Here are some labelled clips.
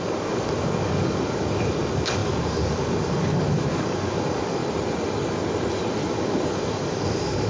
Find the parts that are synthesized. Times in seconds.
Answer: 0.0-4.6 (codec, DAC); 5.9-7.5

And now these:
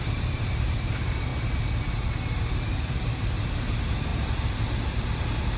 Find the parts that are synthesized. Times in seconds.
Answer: 0.0-1.3 (vocoder, BigVGAN v2); 2.5-4.1